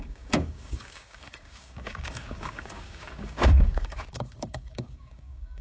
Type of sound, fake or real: fake